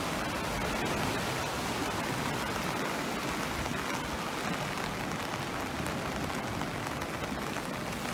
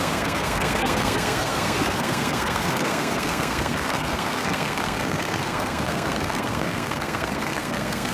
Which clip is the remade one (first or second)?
second